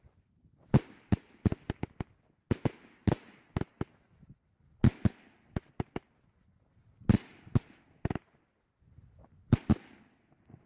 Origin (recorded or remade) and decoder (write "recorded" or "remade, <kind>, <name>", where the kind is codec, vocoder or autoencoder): recorded